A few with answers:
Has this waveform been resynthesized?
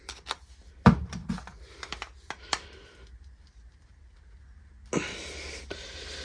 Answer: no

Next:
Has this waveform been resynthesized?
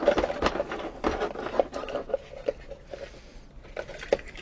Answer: no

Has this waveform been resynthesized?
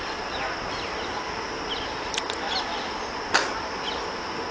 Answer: no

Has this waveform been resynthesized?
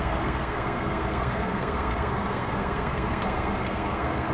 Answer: yes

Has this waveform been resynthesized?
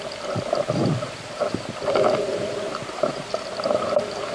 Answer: no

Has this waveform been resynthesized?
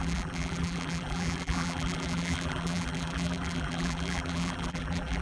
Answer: yes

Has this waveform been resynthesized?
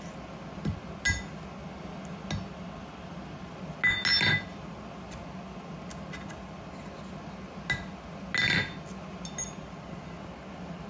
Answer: no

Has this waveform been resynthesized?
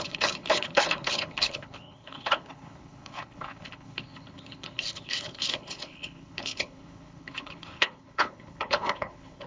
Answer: yes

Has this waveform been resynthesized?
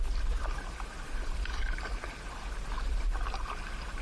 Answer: no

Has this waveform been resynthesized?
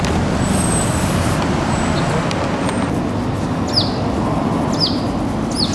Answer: no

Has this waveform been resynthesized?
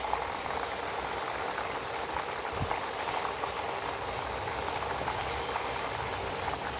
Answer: no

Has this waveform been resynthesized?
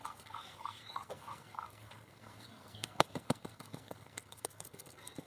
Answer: yes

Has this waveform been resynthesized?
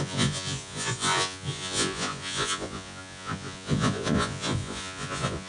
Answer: yes